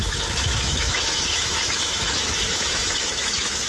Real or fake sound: fake